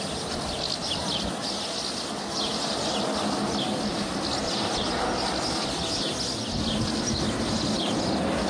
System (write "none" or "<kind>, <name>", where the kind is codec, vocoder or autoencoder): none